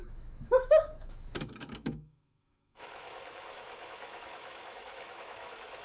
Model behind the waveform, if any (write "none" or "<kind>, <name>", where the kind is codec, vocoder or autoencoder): autoencoder, DAC-VAE